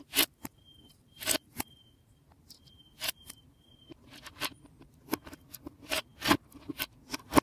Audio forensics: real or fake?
real